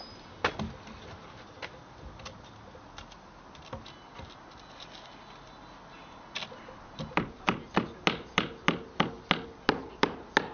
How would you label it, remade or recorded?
recorded